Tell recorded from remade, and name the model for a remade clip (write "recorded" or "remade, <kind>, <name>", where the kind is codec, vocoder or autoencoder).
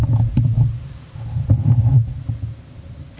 recorded